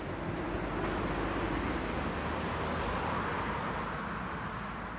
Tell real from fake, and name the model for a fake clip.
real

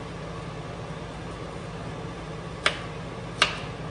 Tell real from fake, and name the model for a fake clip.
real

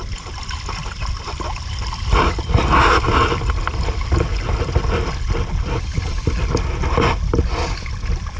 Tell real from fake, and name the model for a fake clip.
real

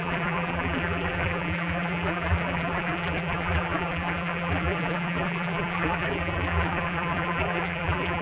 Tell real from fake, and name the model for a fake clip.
fake, vocoder, BigVGAN v2